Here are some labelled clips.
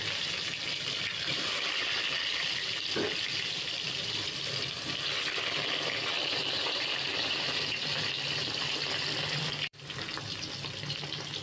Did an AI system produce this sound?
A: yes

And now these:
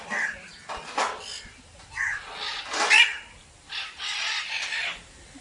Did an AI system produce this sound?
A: no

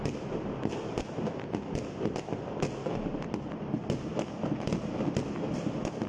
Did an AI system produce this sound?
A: no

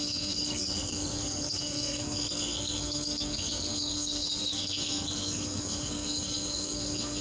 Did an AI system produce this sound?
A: yes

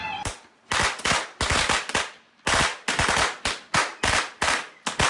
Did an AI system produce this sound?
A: no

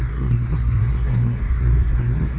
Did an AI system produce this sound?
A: yes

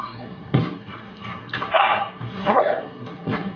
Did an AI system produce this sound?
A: yes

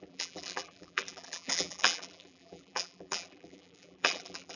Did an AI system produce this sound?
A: yes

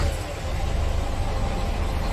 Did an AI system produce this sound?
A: no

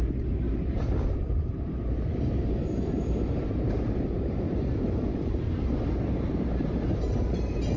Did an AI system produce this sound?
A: yes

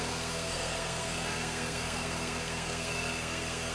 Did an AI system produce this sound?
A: yes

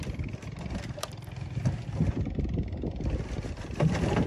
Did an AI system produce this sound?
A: no